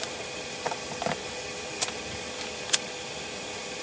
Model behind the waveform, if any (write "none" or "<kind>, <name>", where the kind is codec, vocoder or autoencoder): none